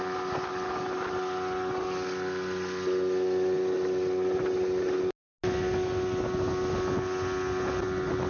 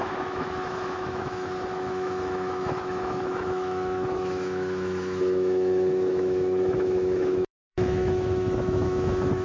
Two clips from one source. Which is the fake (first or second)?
second